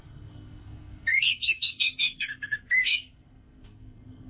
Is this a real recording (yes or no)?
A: no